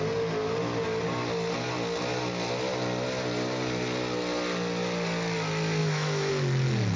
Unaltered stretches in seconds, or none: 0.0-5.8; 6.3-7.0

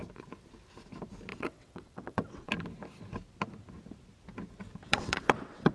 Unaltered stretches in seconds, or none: 0.0-1.3; 2.5-4.8